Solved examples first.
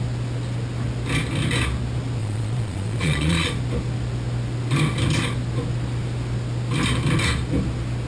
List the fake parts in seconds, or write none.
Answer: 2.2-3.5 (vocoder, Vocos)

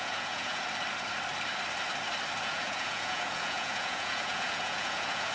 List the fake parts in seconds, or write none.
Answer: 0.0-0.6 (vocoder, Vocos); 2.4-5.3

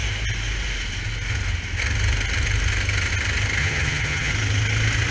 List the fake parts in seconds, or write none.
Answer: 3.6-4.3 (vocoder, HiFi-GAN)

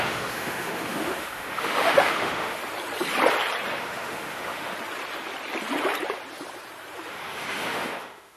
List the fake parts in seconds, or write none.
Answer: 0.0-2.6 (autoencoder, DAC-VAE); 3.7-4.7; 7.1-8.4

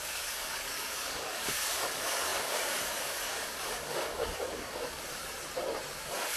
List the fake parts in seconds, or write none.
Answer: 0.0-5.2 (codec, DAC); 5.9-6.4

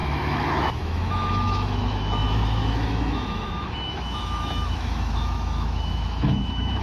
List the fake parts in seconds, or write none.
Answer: 0.0-6.8 (autoencoder, DAC-VAE)